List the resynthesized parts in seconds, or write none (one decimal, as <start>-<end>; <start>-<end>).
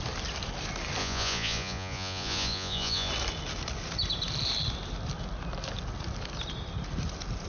1.0-3.1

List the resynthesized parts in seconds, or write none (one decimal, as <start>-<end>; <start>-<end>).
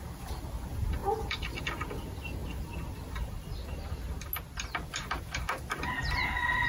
none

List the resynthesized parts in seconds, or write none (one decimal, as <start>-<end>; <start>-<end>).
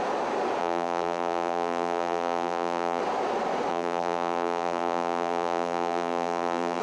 0.6-3.0; 3.7-6.8